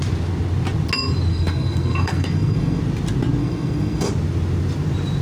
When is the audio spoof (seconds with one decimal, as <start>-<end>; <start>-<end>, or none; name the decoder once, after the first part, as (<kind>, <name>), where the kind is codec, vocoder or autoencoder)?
1.3-2.8 (codec, SNAC); 3.4-4.1